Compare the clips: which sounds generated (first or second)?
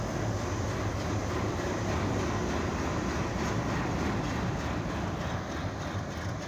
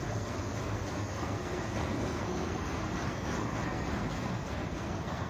second